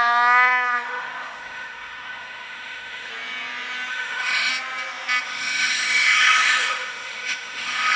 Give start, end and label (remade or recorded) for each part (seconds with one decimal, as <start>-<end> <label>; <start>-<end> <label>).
0.0-3.1 remade; 3.1-3.9 recorded; 3.9-4.5 remade; 4.5-5.2 recorded; 5.2-8.0 remade